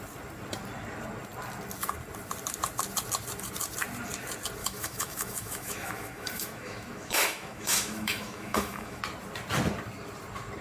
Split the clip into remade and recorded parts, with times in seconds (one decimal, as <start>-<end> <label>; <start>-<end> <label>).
0.0-4.6 recorded; 4.6-9.0 remade; 9.0-10.6 recorded